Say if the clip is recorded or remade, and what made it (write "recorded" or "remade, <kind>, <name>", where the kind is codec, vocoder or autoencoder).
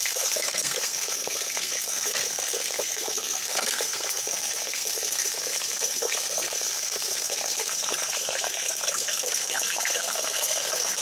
remade, codec, SNAC